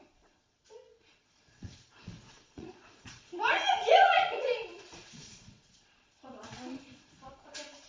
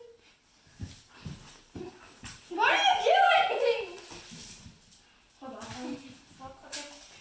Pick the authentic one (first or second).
second